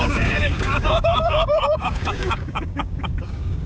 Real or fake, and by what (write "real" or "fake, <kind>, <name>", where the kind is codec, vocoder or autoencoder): fake, codec, DAC